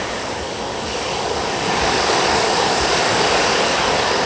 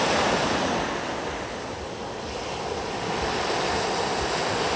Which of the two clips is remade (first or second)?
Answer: first